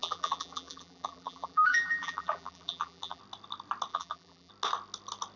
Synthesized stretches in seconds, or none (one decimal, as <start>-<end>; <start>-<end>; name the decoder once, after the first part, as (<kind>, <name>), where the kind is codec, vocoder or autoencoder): 0.0-3.2 (vocoder, BigVGAN v2); 3.9-4.5